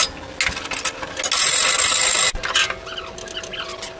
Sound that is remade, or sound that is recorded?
recorded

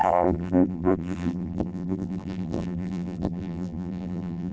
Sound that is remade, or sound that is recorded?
remade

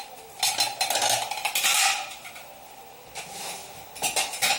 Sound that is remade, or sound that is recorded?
recorded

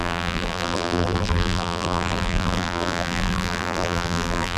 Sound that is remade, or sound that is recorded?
remade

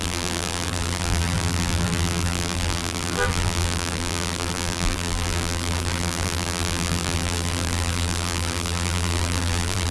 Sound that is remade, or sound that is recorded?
remade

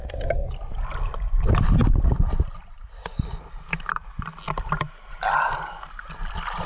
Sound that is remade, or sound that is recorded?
recorded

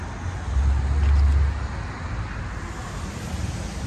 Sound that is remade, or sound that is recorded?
recorded